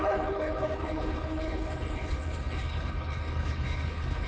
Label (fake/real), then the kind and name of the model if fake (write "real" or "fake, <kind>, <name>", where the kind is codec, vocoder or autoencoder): fake, codec, HILCodec